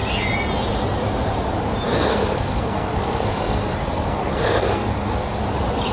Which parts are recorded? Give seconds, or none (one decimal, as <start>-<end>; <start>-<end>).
0.0-1.9; 5.4-5.9